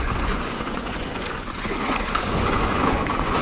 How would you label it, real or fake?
fake